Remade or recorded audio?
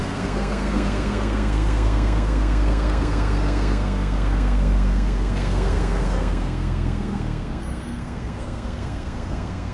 remade